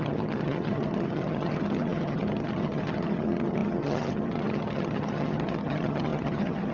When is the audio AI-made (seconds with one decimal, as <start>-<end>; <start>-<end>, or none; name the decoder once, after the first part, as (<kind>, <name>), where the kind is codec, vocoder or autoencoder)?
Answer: 0.0-6.7 (vocoder, HiFi-GAN)